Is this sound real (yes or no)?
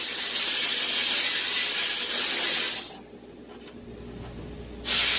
yes